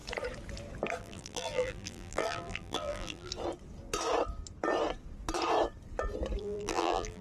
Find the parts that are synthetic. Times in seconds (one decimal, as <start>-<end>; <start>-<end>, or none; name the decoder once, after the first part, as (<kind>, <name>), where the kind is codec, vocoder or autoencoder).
1.0-3.3 (vocoder, BigVGAN v2); 6.4-7.2